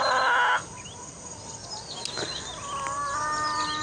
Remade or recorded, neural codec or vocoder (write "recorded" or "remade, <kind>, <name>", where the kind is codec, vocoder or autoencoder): recorded